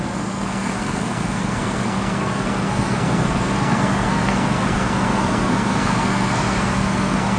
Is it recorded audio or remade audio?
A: remade